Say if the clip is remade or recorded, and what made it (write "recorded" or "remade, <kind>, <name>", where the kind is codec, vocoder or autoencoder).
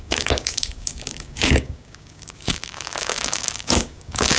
remade, codec, DAC